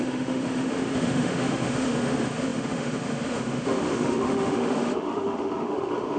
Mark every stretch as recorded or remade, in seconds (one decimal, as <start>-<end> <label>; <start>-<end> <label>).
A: 0.0-6.2 remade